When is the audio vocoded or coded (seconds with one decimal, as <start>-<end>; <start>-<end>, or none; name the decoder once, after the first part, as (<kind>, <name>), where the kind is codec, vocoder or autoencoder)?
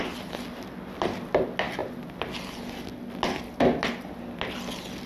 none